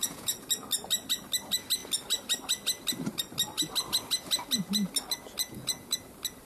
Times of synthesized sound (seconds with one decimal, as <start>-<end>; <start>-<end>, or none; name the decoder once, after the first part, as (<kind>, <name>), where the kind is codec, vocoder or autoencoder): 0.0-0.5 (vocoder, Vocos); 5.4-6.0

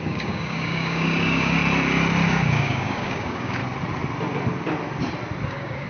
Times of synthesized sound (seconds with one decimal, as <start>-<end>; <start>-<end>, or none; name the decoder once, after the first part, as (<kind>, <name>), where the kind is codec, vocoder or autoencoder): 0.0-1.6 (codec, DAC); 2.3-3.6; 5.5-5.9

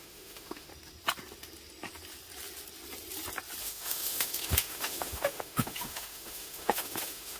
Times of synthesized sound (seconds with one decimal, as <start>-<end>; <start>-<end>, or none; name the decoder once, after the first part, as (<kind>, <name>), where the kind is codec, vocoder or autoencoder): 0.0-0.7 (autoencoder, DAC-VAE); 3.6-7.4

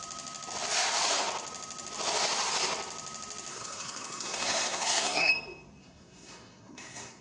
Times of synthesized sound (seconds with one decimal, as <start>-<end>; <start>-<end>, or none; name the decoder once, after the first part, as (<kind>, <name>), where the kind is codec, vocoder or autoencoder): 3.5-5.3 (codec, SNAC); 5.8-7.2